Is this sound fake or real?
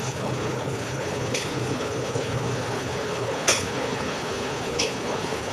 fake